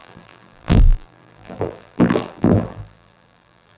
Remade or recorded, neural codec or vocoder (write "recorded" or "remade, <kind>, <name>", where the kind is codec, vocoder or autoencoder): remade, vocoder, BigVGAN v2